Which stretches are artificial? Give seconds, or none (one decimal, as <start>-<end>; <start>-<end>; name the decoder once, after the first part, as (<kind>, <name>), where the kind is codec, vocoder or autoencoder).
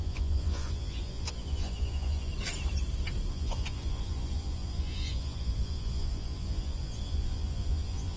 0.0-2.3 (vocoder, Vocos); 3.3-8.2